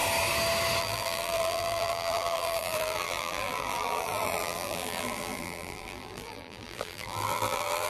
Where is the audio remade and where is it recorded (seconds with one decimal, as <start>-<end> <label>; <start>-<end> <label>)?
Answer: 0.0-0.8 recorded; 0.8-7.9 remade